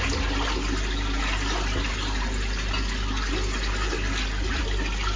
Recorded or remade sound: recorded